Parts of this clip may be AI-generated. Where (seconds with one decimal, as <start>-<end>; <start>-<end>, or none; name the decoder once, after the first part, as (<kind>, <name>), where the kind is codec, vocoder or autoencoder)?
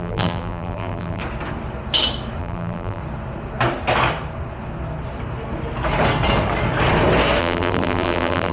0.0-1.2 (vocoder, BigVGAN v2); 2.4-3.0; 7.4-8.5